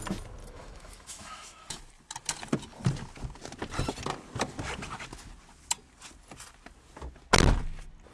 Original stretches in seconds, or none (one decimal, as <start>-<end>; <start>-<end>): 0.0-0.4; 1.8-8.1